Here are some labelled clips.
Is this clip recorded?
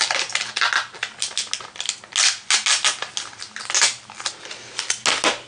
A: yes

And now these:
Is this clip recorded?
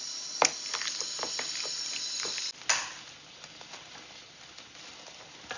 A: yes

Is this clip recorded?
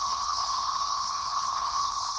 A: no